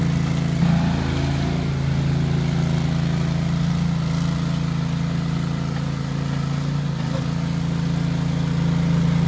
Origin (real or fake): real